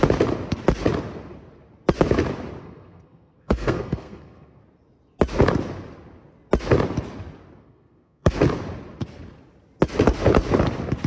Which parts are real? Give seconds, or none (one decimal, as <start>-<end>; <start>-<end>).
0.0-2.6; 4.6-7.6; 8.3-11.1